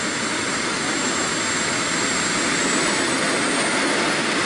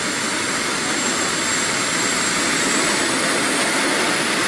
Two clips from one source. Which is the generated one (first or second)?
second